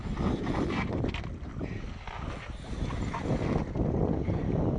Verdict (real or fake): real